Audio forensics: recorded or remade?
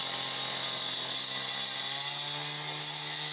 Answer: recorded